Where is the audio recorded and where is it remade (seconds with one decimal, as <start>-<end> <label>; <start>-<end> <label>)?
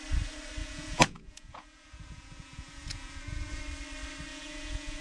0.0-0.6 recorded; 0.6-3.6 remade; 3.6-4.3 recorded; 4.3-5.0 remade